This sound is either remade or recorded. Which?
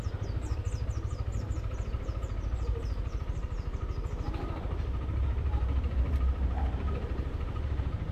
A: remade